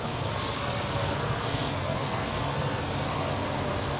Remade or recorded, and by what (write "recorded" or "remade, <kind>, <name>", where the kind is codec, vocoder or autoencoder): remade, codec, SNAC